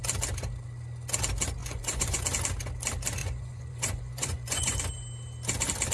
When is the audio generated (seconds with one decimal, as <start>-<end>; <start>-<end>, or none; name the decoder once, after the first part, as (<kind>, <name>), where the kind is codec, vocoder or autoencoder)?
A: 1.6-2.2 (vocoder, Vocos); 3.2-4.8